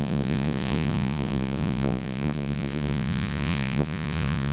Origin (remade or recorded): remade